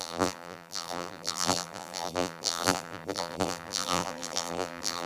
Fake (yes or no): yes